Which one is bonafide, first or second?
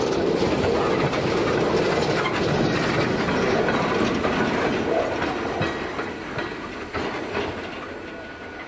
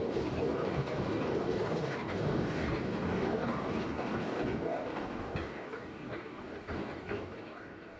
first